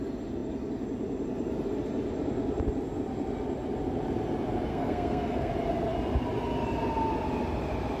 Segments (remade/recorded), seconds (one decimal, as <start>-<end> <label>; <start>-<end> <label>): 0.0-4.7 recorded; 4.7-5.5 remade; 5.5-8.0 recorded